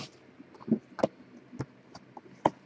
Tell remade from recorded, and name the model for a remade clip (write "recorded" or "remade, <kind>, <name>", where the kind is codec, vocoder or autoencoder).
recorded